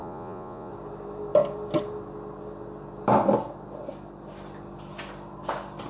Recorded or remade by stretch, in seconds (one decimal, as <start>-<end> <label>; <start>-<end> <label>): 0.0-0.7 remade; 0.7-5.9 recorded